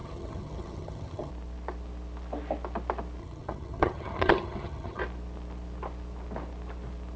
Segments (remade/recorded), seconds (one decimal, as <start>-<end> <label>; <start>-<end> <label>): 0.0-1.3 remade; 1.3-3.2 recorded; 3.2-5.0 remade; 5.0-7.2 recorded